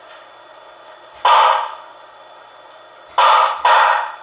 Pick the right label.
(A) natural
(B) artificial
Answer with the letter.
A